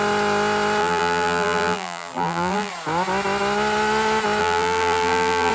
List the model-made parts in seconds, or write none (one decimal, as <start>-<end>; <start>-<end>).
0.8-2.7; 4.4-5.5

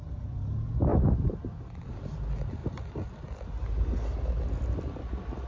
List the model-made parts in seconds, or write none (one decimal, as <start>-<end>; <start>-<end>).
0.9-2.2; 2.6-3.1

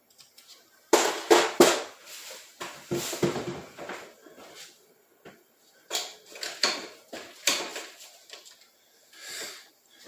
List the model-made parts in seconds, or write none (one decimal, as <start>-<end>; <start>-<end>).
none

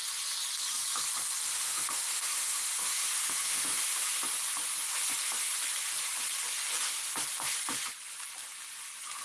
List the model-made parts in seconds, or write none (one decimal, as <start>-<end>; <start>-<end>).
1.5-4.1

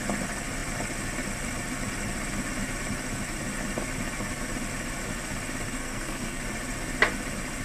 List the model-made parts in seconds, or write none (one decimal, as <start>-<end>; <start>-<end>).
5.8-6.4